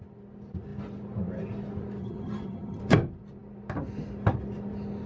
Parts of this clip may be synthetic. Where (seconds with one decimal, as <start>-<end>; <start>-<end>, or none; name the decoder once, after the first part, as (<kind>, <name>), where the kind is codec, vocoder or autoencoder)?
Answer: 2.0-2.8 (vocoder, HiFi-GAN)